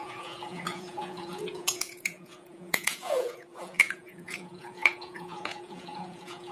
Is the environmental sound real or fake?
fake